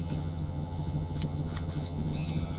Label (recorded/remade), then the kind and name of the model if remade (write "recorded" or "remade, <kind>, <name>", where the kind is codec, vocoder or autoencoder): remade, vocoder, HiFi-GAN